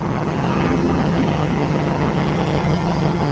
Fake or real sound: fake